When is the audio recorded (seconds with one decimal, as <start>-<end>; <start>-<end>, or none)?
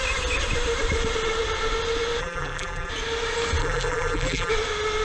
0.0-2.2; 2.9-3.6; 4.5-5.0